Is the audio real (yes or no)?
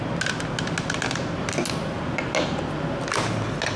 yes